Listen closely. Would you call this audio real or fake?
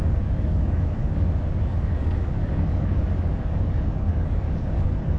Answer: fake